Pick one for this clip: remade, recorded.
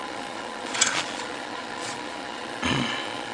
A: remade